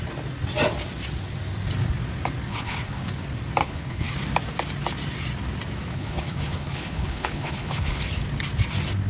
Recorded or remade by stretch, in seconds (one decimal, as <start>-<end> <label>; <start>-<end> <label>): 0.0-2.5 recorded; 2.5-3.1 remade; 3.1-3.6 recorded; 3.6-4.1 remade; 4.1-5.9 recorded; 5.9-8.0 remade; 8.0-9.1 recorded